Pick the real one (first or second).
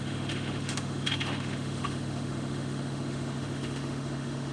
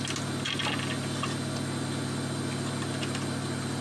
second